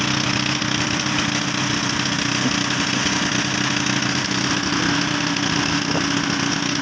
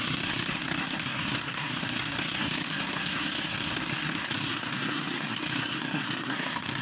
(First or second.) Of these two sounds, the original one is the first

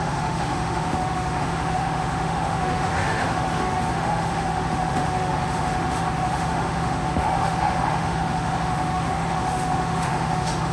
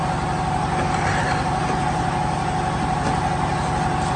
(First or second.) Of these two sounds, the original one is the second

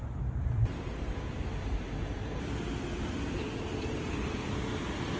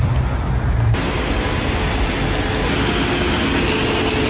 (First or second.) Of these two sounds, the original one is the second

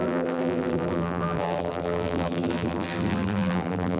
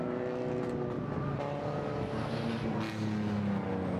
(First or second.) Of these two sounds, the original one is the second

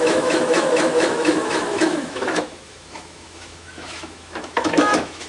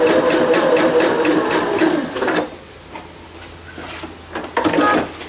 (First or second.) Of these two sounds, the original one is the second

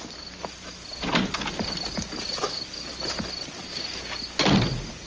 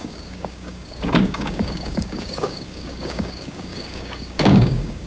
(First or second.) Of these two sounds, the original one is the first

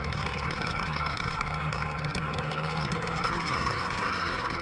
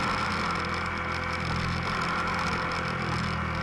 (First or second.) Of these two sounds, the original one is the second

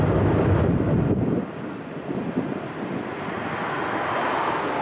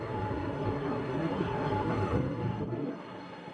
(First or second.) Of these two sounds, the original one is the first